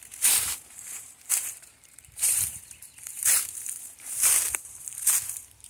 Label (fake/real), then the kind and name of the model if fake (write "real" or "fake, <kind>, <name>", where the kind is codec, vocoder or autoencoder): fake, vocoder, BigVGAN v2